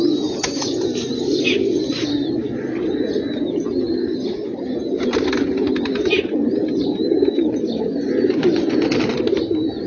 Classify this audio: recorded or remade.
recorded